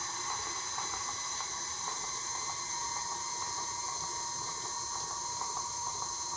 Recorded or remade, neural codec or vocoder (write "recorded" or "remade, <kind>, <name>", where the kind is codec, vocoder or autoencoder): remade, vocoder, BigVGAN v2